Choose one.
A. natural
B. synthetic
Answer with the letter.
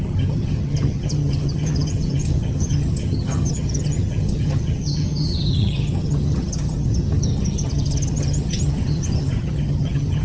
B